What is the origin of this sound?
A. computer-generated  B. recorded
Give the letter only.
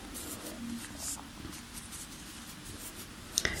B